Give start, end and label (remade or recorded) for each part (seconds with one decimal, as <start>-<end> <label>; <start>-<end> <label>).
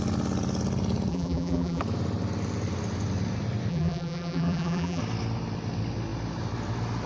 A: 0.0-1.1 recorded; 1.1-1.8 remade; 1.8-3.7 recorded; 3.7-5.0 remade; 5.0-7.1 recorded